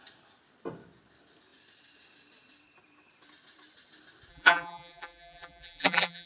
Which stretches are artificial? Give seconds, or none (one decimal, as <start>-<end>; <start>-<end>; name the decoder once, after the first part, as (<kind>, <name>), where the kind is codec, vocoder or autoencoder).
4.3-6.3 (vocoder, BigVGAN v2)